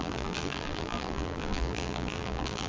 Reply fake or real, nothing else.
fake